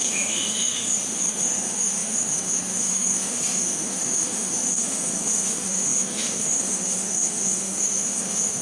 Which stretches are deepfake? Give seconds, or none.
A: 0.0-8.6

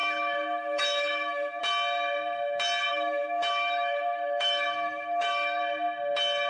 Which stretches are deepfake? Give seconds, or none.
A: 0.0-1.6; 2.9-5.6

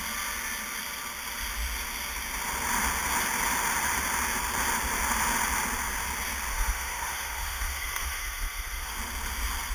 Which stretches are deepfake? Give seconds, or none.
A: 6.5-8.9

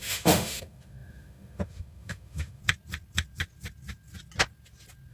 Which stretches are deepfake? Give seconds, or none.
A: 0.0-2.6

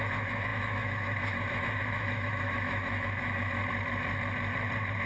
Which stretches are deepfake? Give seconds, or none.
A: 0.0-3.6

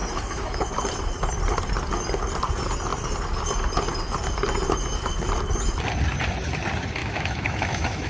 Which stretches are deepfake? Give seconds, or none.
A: 0.0-0.7; 7.0-8.1

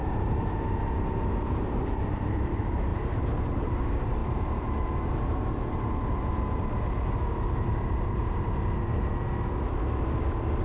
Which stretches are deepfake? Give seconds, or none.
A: none